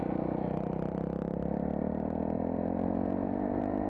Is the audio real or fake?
fake